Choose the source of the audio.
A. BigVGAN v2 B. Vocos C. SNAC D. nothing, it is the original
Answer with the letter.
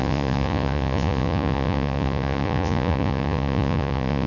B